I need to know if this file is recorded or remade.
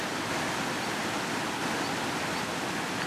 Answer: recorded